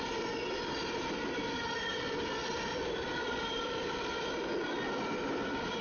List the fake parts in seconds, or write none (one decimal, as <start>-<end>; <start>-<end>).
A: 1.9-4.5